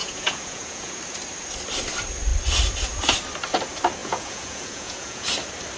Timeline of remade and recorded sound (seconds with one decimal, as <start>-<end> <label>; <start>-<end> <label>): 0.0-1.0 remade; 1.0-4.0 recorded; 4.0-5.3 remade; 5.3-5.8 recorded